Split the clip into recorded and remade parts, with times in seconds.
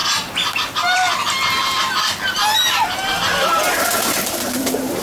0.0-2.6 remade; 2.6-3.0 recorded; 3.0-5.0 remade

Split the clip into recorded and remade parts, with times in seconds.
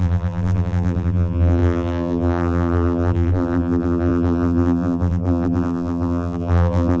0.0-7.0 remade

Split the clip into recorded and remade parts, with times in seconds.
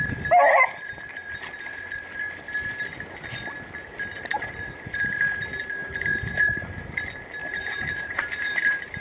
0.0-7.4 recorded; 7.4-9.0 remade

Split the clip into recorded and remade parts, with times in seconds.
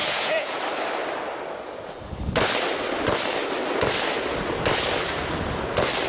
0.0-0.6 remade; 0.6-6.1 recorded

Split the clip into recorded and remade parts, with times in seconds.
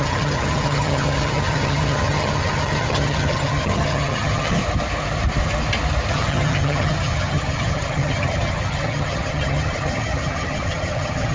0.0-4.6 remade; 4.6-6.1 recorded; 6.1-11.3 remade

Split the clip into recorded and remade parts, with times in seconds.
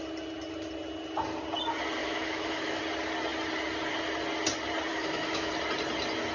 0.0-2.0 recorded; 2.0-2.8 remade; 2.8-4.9 recorded; 4.9-5.5 remade; 5.5-6.3 recorded